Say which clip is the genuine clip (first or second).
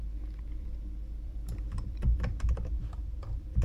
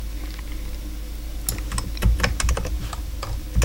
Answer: second